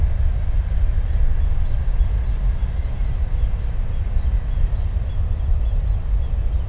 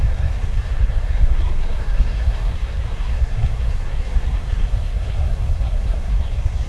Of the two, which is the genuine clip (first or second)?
first